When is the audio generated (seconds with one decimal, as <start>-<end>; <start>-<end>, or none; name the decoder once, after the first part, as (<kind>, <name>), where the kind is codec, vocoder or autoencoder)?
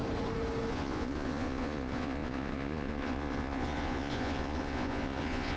0.7-5.6 (vocoder, Vocos)